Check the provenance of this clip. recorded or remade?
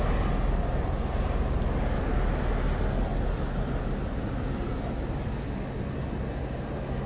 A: recorded